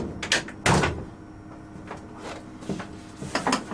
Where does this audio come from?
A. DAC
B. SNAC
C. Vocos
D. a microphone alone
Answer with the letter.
D